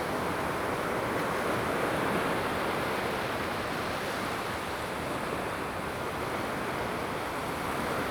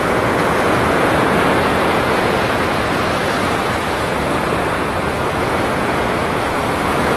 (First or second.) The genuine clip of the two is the first